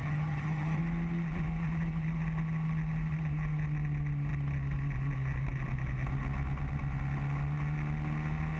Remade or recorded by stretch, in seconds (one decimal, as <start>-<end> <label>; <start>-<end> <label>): 0.0-0.8 remade; 0.8-8.6 recorded